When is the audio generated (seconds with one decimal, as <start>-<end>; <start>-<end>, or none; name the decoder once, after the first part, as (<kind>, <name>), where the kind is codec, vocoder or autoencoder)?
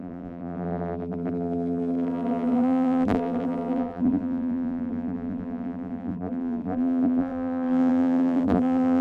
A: 0.0-9.0 (vocoder, BigVGAN v2)